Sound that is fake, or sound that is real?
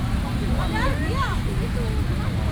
real